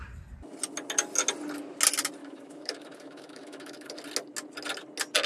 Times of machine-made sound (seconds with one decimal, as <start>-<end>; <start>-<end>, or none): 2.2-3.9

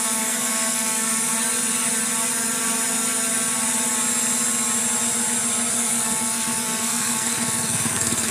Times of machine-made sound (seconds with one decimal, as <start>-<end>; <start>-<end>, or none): 0.0-1.3; 5.7-8.3

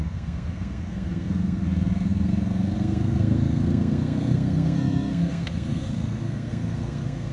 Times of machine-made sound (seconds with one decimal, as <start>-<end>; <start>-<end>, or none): 0.0-7.3

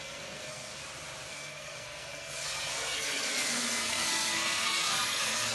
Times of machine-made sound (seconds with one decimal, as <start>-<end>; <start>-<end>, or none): 0.0-0.8; 1.3-5.5

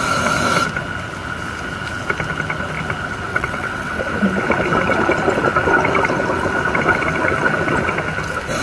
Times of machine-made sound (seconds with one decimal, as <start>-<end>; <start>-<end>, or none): 3.3-4.0

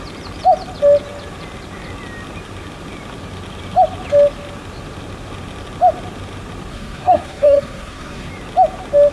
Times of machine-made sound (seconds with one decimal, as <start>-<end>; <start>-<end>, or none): 6.7-8.3

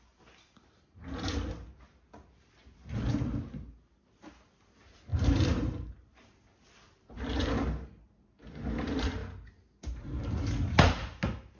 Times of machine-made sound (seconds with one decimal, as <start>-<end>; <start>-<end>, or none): 5.1-7.5